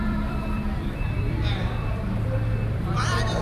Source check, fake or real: fake